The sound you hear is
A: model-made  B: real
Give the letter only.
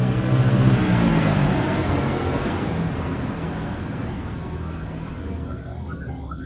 A